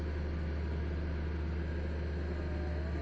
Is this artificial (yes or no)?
no